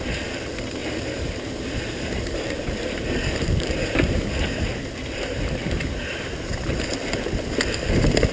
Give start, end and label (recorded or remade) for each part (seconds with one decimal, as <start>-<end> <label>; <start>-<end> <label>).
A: 0.0-0.8 recorded; 0.8-4.8 remade; 4.8-5.3 recorded; 5.3-6.5 remade; 6.5-8.3 recorded